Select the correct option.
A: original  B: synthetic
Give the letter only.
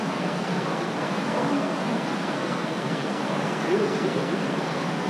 B